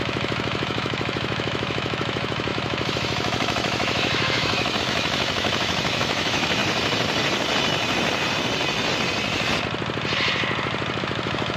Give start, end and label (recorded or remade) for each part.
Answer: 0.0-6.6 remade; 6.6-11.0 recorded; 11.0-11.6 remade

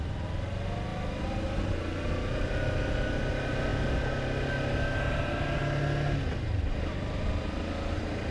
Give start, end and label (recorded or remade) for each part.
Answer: 0.0-8.3 recorded

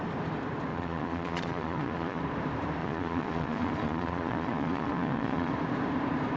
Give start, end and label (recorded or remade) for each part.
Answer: 0.0-0.7 recorded; 0.7-2.2 remade; 2.2-2.8 recorded; 2.8-5.5 remade; 5.5-6.4 recorded